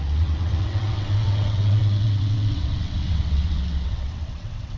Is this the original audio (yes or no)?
no